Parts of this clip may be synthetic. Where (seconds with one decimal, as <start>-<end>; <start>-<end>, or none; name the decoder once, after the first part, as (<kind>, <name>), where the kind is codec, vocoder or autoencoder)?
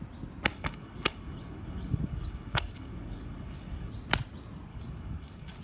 0.5-3.9 (codec, DAC); 4.7-5.6